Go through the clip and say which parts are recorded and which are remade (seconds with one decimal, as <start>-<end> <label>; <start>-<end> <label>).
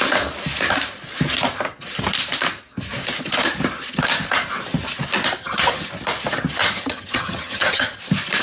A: 0.0-5.4 recorded; 5.4-5.9 remade; 5.9-6.6 recorded; 6.6-8.0 remade; 8.0-8.4 recorded